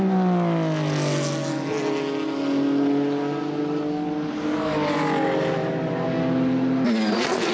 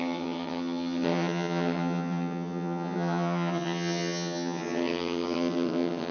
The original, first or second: first